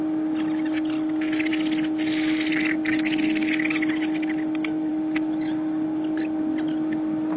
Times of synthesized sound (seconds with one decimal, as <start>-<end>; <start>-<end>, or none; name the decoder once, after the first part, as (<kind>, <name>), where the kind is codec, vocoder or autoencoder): none

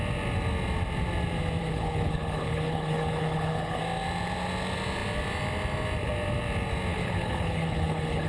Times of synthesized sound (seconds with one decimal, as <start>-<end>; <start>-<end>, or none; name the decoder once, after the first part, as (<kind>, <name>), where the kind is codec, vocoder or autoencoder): 1.6-3.8 (codec, HILCodec); 6.9-8.3

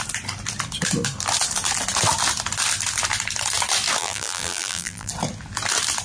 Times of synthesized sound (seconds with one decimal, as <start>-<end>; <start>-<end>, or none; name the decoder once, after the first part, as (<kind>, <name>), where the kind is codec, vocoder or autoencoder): 4.0-5.1 (vocoder, BigVGAN v2)

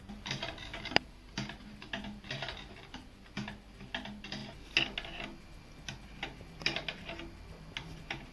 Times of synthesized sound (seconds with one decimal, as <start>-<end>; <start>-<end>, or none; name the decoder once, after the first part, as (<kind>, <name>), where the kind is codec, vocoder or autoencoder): none

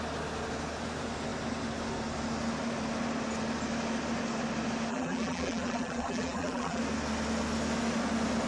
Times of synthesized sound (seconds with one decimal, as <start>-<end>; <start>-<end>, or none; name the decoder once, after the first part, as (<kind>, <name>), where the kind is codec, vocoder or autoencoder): 4.9-6.8 (vocoder, BigVGAN v2)

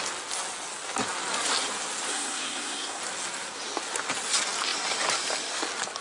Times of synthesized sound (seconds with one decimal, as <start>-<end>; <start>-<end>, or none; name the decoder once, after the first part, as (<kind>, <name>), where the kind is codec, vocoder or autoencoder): 2.1-3.0 (codec, SNAC)